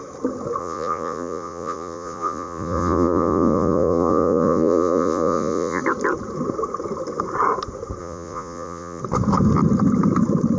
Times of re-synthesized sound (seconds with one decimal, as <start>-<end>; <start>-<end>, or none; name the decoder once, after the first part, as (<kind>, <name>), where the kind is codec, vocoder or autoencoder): 0.6-5.8 (vocoder, Vocos); 8.0-9.0